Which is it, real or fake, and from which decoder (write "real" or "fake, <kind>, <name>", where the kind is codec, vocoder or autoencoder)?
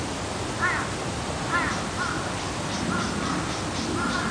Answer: real